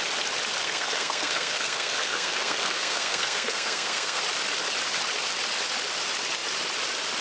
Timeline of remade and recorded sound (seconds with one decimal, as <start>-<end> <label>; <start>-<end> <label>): 0.0-0.6 recorded; 0.6-4.2 remade; 4.2-7.2 recorded